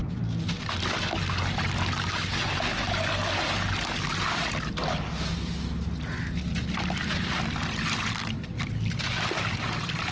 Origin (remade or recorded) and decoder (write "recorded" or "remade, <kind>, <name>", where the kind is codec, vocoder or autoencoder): recorded